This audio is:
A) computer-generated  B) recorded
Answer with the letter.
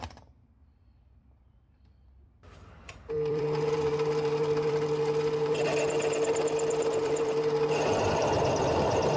A